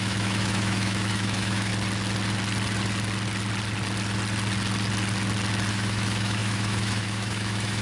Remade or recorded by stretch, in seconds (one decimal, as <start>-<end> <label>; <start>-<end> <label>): 0.0-1.7 remade; 1.7-5.7 recorded; 5.7-7.8 remade